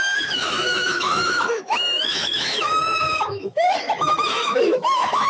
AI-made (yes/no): yes